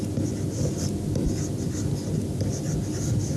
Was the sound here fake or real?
real